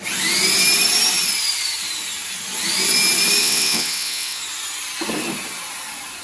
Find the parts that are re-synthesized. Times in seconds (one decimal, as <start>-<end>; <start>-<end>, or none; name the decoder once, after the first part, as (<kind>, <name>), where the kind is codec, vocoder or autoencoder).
3.4-4.4 (vocoder, WaveNeXt)